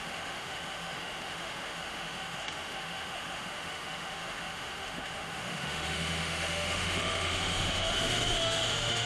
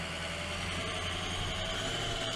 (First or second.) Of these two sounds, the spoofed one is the first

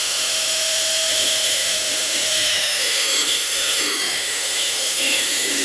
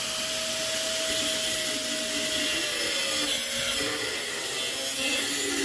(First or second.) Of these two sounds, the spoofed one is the first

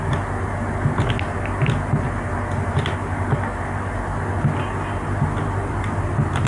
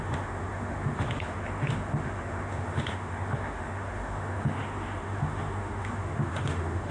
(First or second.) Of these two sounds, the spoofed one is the second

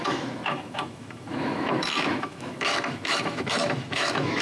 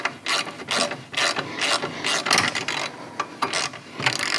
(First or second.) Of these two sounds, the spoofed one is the first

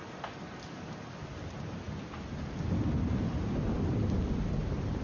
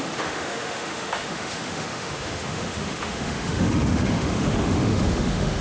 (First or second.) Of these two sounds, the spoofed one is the second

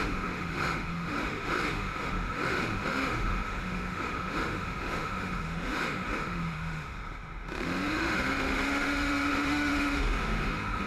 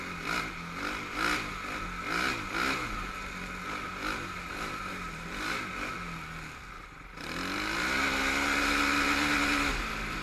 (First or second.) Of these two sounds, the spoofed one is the first